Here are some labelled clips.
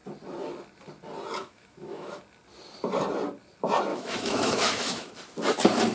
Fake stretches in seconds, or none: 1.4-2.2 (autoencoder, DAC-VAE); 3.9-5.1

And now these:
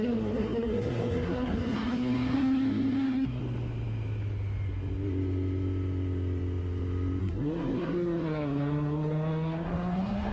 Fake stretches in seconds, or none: 0.0-3.4 (codec, SNAC); 7.2-10.3

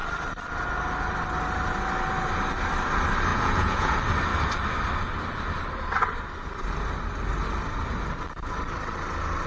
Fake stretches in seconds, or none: 3.3-3.9 (vocoder, Vocos)

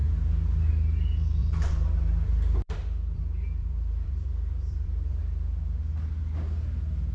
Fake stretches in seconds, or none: 1.4-3.2 (vocoder, BigVGAN v2); 3.6-5.2

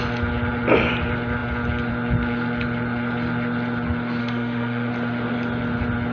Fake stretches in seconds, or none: 4.2-4.9 (autoencoder, DAC-VAE)

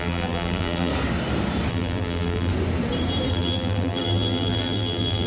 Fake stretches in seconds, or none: 0.0-0.9 (vocoder, BigVGAN v2); 1.7-2.5; 3.3-5.3

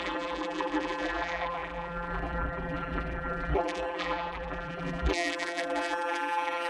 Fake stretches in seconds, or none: 0.0-6.7 (vocoder, BigVGAN v2)

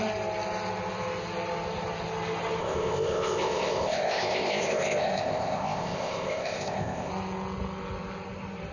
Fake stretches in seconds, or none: 2.6-7.1 (codec, ZipCodec)